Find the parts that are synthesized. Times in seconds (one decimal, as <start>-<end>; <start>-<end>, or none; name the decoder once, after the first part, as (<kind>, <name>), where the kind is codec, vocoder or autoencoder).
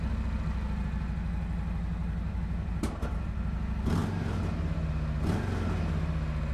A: none